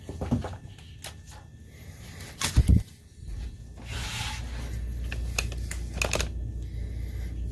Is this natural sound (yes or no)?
yes